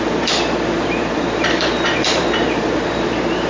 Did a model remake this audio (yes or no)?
yes